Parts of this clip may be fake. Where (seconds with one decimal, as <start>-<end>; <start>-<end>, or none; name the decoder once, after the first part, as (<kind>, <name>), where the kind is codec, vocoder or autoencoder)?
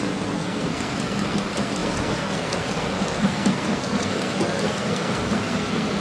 0.0-6.0 (codec, SNAC)